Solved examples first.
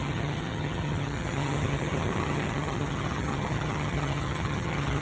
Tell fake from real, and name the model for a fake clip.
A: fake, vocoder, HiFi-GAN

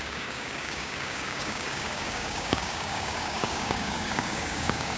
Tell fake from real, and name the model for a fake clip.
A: fake, codec, DAC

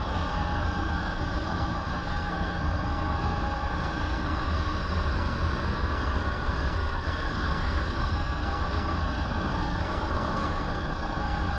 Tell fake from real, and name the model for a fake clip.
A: fake, codec, SNAC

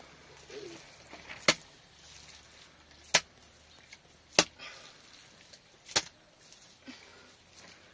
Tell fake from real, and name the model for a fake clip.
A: real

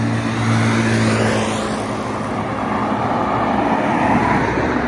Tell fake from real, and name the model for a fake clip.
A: real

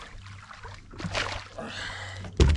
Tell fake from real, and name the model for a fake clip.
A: real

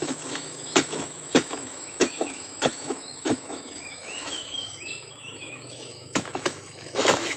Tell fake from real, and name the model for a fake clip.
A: fake, autoencoder, DAC-VAE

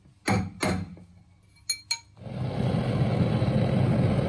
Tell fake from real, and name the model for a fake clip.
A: real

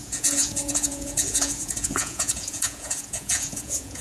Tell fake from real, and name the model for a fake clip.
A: fake, vocoder, Vocos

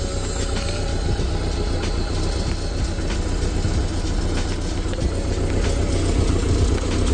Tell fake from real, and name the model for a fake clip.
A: real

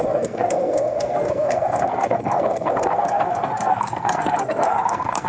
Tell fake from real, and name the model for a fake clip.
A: fake, codec, SNAC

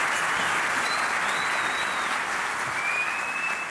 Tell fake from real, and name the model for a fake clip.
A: real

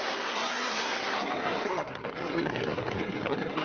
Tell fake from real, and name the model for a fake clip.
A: fake, codec, SNAC